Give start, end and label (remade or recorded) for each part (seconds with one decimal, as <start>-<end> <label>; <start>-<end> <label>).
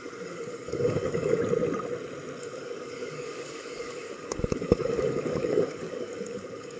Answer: 0.0-1.4 remade; 1.4-2.4 recorded; 2.4-6.8 remade